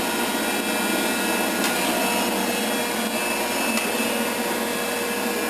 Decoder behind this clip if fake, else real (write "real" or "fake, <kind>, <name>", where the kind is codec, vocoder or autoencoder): real